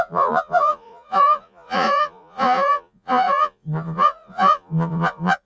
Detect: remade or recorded remade